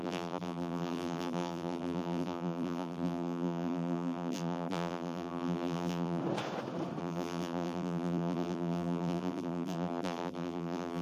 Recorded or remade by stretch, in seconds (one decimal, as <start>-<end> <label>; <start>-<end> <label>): 0.0-6.2 remade; 6.2-7.0 recorded; 7.0-11.0 remade